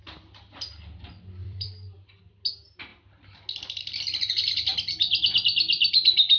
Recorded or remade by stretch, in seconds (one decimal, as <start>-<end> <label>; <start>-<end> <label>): 0.0-1.4 recorded; 1.4-2.2 remade; 2.2-6.4 recorded